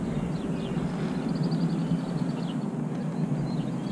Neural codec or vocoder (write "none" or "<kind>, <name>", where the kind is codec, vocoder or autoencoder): none